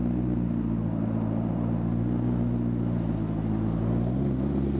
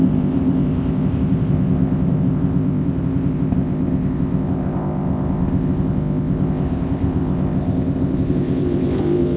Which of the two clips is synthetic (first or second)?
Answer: second